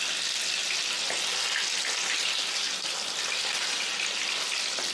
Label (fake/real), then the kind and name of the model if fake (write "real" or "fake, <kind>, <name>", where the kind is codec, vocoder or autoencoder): real